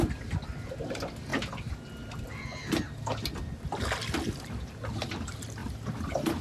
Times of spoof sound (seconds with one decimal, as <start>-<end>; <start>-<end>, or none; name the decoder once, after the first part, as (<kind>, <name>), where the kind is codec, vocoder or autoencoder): 5.6-6.4 (vocoder, BigVGAN v2)